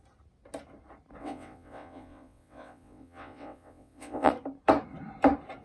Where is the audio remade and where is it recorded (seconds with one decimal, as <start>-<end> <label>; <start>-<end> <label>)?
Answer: 0.0-1.2 recorded; 1.2-4.3 remade; 4.3-5.6 recorded